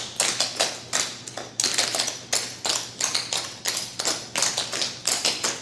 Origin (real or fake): real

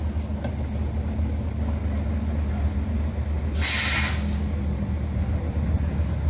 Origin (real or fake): real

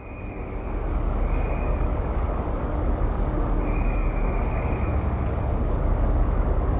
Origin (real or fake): fake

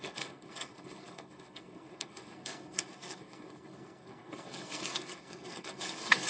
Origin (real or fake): fake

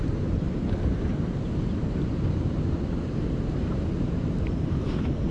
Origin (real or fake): fake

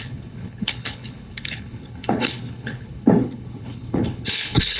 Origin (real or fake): fake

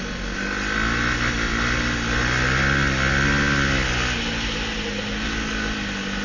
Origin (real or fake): real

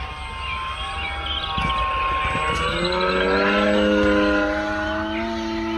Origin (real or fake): real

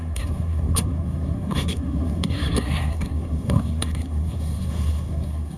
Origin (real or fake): fake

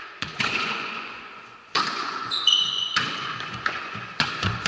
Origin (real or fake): fake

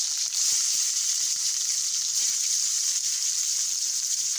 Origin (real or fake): fake